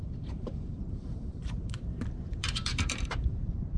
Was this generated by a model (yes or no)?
yes